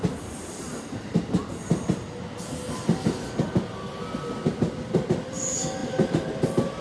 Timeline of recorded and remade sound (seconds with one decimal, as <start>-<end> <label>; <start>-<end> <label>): 0.0-6.8 recorded